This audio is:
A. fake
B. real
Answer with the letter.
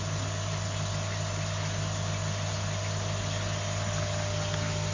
B